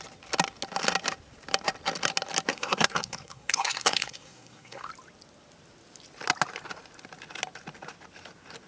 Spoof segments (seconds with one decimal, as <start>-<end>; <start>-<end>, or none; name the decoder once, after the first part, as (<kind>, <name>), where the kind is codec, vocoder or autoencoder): 2.5-4.9 (codec, SNAC)